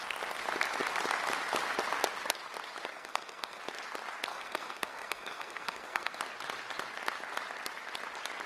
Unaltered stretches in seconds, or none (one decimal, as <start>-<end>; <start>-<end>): 0.0-2.9; 3.6-4.3; 6.2-8.5

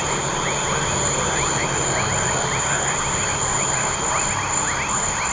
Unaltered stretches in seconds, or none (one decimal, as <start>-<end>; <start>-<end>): 0.0-5.3

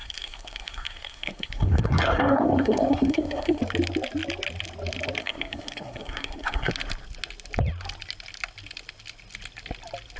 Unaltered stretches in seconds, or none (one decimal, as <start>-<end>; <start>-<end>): 3.6-5.2; 6.7-10.2

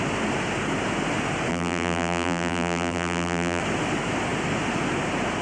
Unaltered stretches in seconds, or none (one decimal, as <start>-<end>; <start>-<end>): 0.0-1.5; 3.6-5.4